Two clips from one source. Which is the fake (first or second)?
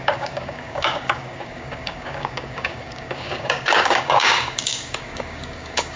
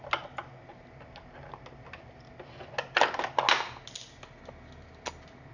first